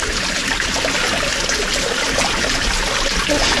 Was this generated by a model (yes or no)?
no